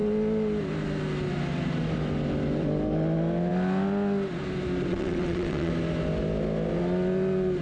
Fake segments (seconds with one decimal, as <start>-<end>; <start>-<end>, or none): 4.9-5.7